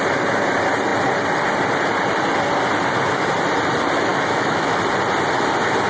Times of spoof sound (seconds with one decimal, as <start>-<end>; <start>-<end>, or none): 4.1-4.8